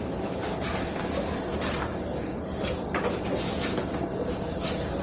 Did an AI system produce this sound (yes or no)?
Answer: no